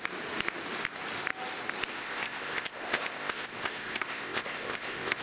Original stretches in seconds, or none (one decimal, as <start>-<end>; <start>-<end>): 0.0-1.9